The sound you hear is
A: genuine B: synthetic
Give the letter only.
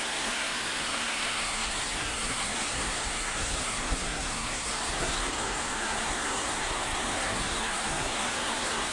B